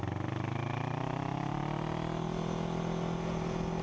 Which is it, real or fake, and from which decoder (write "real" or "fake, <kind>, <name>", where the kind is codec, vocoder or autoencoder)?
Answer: real